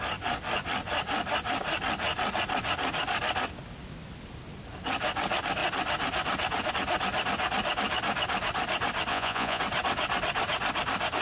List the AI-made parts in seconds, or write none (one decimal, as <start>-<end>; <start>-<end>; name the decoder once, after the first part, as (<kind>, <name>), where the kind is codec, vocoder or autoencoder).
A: 9.1-9.6 (vocoder, Vocos)